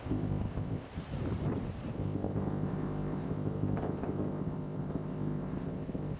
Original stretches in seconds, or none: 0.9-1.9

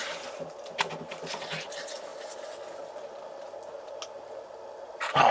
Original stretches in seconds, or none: 2.1-4.8

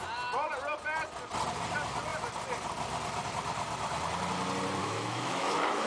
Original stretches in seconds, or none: 0.0-4.8

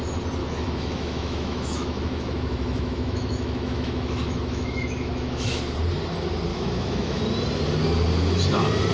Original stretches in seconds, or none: 0.0-0.4; 5.6-6.5; 7.2-8.9

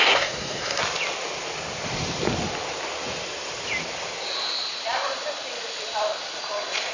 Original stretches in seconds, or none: 0.8-6.9